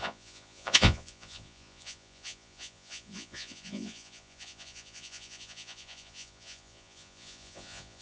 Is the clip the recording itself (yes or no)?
no